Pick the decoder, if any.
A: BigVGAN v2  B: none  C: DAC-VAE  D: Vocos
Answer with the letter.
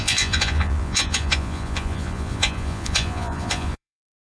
D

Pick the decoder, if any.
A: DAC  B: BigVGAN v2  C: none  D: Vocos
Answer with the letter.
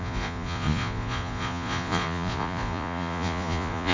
D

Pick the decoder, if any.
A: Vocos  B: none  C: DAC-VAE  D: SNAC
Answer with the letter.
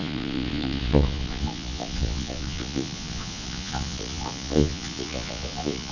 A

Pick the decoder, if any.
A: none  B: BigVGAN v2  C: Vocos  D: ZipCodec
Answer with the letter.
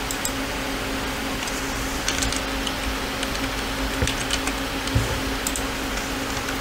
A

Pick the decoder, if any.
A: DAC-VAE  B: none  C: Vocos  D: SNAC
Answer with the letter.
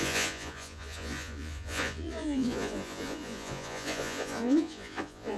C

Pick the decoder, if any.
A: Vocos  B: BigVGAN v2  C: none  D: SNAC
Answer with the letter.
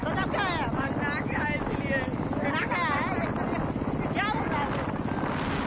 C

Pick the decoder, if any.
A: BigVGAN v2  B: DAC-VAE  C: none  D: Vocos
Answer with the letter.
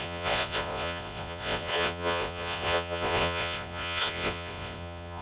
D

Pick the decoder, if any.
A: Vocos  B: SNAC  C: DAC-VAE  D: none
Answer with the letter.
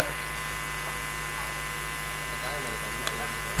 D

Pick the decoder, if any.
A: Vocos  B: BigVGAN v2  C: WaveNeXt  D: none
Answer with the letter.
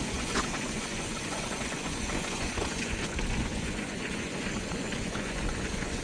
A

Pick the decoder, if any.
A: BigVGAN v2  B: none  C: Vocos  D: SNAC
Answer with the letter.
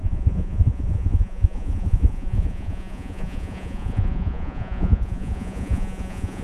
C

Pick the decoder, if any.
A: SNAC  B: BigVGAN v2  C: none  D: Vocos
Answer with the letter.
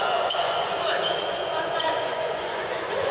D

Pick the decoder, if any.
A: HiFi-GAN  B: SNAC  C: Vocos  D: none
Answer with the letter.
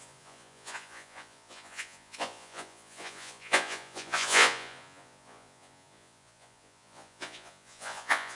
C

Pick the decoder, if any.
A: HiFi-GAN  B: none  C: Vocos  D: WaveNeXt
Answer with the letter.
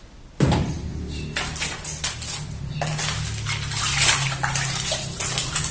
B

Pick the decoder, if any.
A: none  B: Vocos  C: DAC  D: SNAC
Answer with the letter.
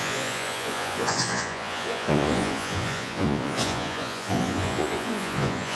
B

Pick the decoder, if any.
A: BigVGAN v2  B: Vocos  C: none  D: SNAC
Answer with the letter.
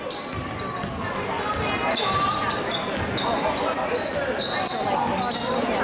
C